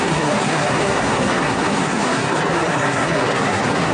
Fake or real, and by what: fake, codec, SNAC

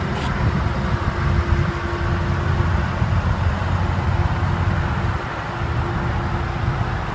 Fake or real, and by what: real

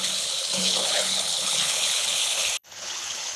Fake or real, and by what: fake, codec, HILCodec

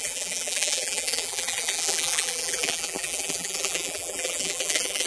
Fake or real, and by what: fake, vocoder, BigVGAN v2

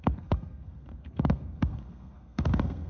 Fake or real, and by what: fake, codec, SNAC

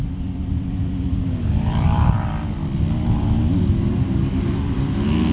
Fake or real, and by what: real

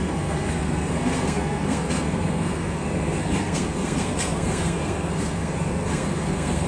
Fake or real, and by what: fake, codec, SNAC